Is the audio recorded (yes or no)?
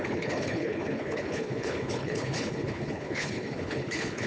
no